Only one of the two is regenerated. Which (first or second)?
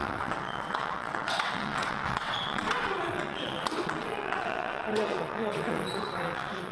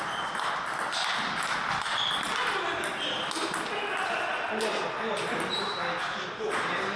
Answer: first